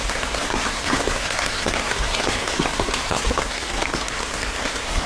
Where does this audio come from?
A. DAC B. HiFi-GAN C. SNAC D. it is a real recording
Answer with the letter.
C